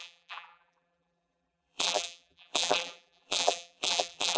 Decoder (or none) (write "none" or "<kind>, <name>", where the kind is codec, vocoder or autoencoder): vocoder, BigVGAN v2